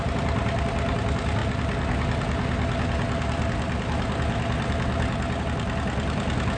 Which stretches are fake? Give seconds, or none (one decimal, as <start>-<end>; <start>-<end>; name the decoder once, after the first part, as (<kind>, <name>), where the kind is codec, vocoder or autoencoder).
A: none